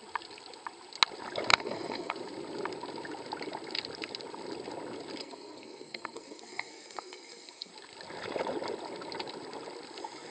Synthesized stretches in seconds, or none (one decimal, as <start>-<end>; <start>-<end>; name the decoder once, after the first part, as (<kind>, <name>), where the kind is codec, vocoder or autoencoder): 1.5-2.1 (codec, SNAC); 5.2-7.7